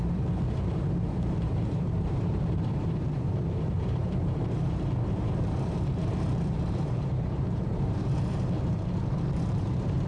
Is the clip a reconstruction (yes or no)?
yes